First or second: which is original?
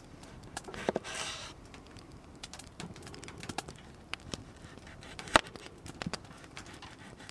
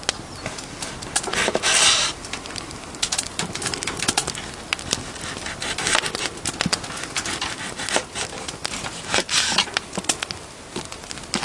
second